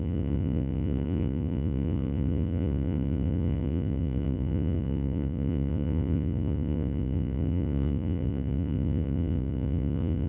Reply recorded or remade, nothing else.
remade